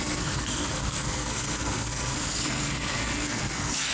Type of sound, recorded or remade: remade